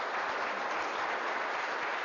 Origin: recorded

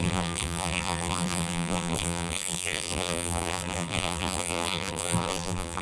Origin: remade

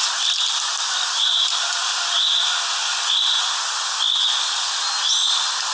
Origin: recorded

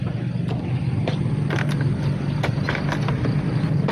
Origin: recorded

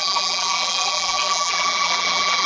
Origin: remade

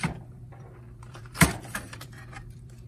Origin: remade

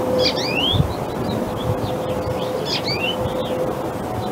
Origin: recorded